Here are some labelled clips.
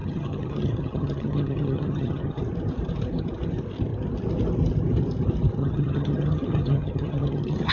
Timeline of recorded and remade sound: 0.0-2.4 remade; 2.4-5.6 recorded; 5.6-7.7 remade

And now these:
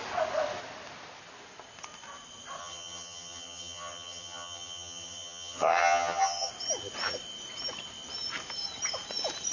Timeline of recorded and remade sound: 0.0-2.6 recorded; 2.6-6.5 remade; 6.5-9.5 recorded

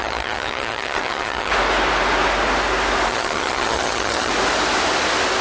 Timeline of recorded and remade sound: 0.0-1.5 remade; 1.5-3.1 recorded; 3.1-4.3 remade; 4.3-5.4 recorded

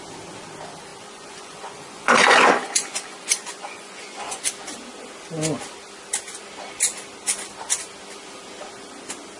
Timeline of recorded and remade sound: 0.0-0.9 recorded; 0.9-4.4 remade; 4.4-9.4 recorded